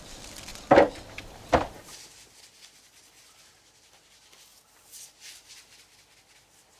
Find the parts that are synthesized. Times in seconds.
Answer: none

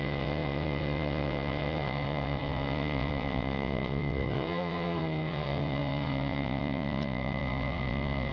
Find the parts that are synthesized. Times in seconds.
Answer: 0.0-8.3

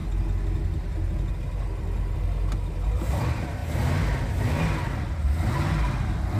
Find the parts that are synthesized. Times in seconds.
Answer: none

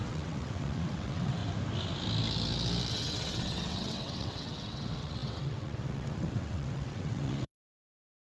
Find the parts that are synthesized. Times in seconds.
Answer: 0.0-1.4; 2.9-8.3